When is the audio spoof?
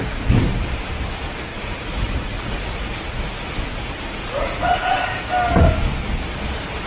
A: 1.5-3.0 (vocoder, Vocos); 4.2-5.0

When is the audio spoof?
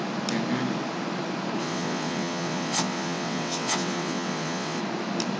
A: 1.6-4.8 (vocoder, WaveNeXt)